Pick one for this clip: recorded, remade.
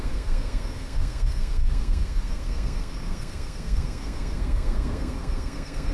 remade